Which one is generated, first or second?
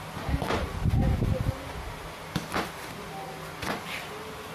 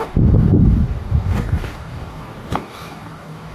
second